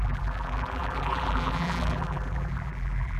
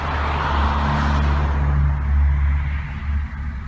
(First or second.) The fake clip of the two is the first